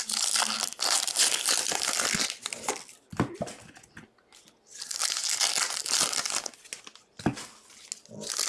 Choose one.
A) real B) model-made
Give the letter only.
A